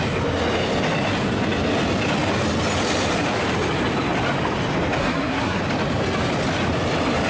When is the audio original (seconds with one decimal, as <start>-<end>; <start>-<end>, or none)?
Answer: 0.0-5.0; 5.6-7.3